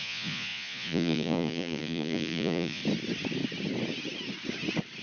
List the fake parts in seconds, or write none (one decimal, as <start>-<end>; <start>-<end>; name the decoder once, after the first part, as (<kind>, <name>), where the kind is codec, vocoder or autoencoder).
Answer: 0.0-2.8 (vocoder, Vocos)